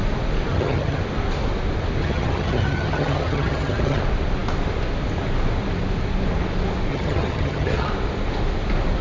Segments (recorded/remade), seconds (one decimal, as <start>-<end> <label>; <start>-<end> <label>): 0.0-0.5 recorded; 0.5-1.0 remade; 1.0-2.0 recorded; 2.0-4.0 remade; 4.0-6.9 recorded; 6.9-7.9 remade; 7.9-9.0 recorded